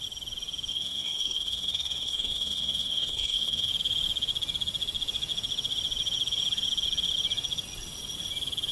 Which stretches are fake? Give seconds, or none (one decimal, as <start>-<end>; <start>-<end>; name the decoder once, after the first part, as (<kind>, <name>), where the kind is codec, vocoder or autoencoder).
0.7-3.7 (codec, SNAC)